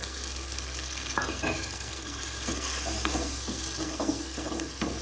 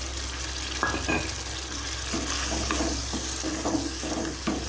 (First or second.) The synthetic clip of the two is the first